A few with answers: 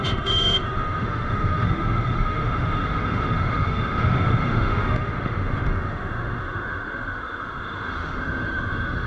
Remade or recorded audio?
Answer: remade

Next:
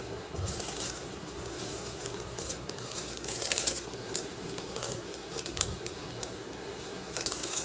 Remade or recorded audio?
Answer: remade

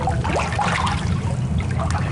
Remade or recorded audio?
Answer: recorded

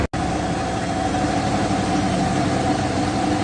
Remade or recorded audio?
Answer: recorded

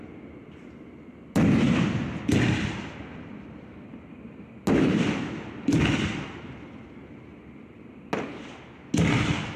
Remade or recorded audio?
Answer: recorded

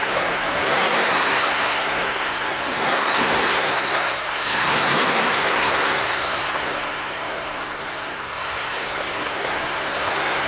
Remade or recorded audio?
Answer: remade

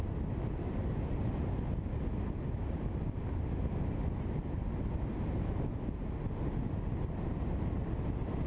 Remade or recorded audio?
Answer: recorded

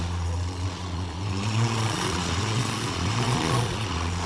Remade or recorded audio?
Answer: remade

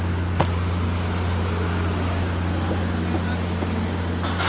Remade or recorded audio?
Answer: recorded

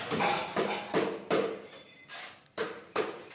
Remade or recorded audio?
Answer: recorded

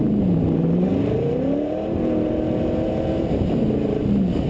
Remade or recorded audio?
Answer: remade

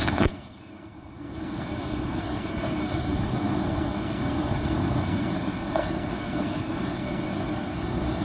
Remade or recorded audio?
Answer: remade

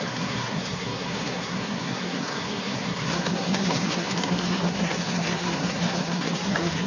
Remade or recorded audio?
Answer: remade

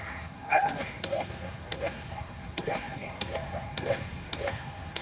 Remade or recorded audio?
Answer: remade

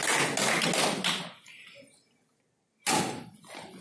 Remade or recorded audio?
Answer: recorded